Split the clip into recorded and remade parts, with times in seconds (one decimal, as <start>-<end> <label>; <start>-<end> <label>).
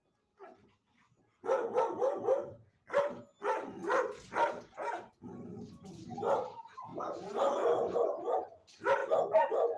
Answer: 0.0-6.9 recorded; 6.9-7.9 remade; 7.9-9.8 recorded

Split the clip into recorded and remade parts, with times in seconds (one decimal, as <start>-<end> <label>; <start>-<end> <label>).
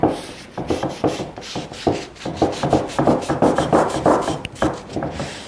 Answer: 0.0-5.5 recorded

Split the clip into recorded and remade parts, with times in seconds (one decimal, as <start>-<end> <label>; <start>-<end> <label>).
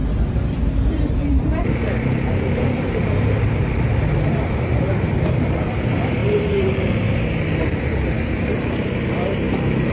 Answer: 0.0-0.6 recorded; 0.6-9.9 remade